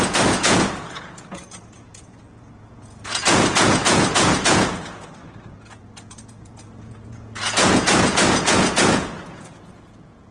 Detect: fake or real fake